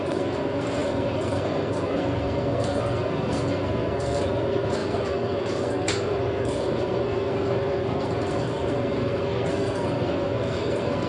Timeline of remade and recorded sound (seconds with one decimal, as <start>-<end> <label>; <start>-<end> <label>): 0.0-11.1 remade